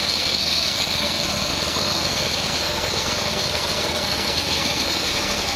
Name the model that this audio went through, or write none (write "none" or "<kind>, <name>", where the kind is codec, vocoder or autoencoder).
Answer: codec, SNAC